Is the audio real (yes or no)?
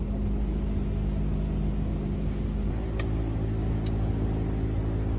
yes